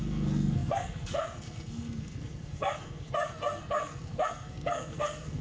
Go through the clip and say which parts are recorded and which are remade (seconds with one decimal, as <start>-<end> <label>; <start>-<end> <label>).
0.0-5.4 remade